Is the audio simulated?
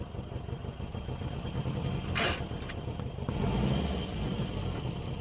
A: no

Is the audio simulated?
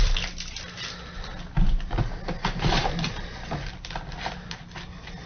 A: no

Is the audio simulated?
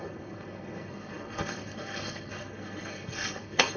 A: yes